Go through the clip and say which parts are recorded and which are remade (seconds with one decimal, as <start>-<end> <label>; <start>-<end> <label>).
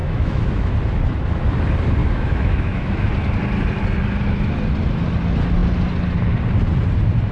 0.0-0.7 remade; 0.7-2.0 recorded; 2.0-3.1 remade; 3.1-7.3 recorded